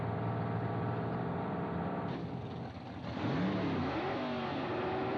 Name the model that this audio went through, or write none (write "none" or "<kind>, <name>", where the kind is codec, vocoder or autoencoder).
none